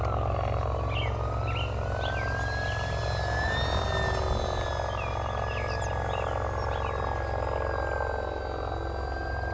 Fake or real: real